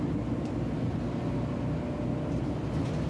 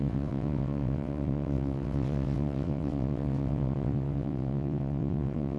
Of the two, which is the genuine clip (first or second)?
first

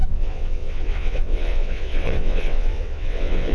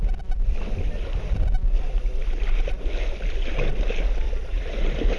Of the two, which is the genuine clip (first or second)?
second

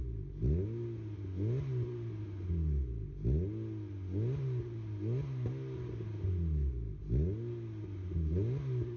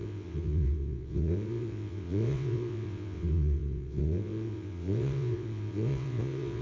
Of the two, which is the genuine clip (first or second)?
first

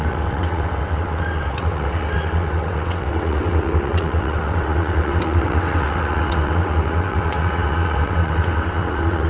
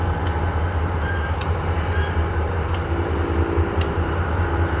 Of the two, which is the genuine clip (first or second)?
second